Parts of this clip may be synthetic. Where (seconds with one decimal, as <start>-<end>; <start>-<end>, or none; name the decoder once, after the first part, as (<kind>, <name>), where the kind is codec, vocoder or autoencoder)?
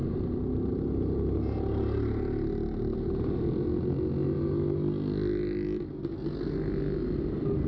none